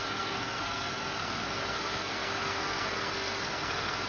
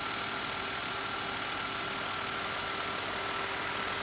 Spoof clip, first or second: first